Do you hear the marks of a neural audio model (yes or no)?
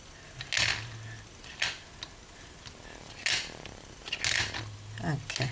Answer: no